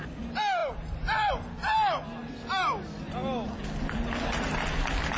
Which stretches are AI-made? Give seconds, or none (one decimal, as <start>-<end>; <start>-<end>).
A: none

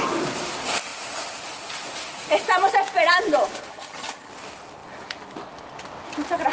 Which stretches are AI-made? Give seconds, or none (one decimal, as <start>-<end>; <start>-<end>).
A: 3.7-4.3

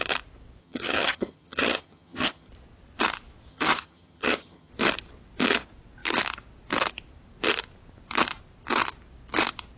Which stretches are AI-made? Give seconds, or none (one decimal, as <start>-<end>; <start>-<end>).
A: 0.6-2.5; 3.5-4.7